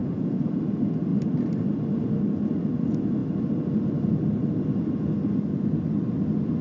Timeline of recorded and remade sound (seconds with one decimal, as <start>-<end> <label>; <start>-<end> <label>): 0.0-0.5 remade; 0.5-6.6 recorded